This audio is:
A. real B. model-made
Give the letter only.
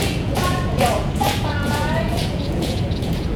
B